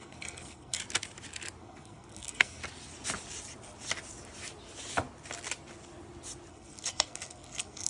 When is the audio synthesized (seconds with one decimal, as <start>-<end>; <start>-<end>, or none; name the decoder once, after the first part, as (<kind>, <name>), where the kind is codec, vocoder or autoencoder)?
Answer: 0.0-0.8 (codec, SNAC); 1.6-2.6; 6.5-7.9